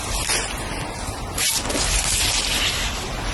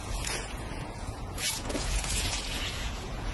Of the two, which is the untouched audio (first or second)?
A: first